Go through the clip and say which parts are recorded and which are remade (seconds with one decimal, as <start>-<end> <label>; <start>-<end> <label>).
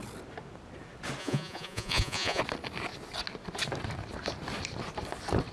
0.0-1.2 recorded; 1.2-2.4 remade; 2.4-5.5 recorded